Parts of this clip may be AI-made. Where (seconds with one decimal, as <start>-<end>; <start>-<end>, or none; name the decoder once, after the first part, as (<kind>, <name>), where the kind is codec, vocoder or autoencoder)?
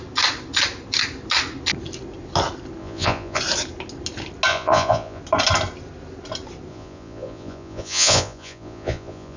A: 2.8-3.4 (vocoder, Vocos); 4.5-5.2; 6.7-9.4